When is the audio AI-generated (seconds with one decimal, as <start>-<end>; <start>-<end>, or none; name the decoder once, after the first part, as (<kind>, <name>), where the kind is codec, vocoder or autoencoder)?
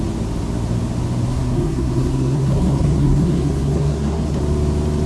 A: 1.3-4.4 (codec, SNAC)